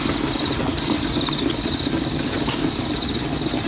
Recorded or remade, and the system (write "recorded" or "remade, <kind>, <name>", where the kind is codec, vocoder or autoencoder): recorded